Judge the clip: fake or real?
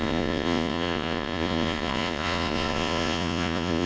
fake